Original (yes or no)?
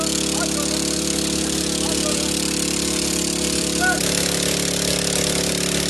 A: yes